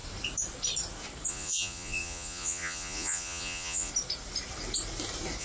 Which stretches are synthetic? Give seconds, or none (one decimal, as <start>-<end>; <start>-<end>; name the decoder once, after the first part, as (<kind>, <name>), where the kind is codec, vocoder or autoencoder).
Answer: 1.3-3.9 (vocoder, Vocos)